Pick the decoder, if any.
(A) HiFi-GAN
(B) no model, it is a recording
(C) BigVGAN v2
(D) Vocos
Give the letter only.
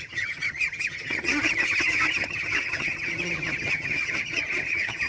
A